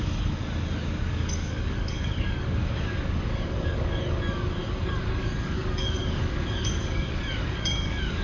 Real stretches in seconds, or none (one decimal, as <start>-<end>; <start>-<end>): 0.4-1.0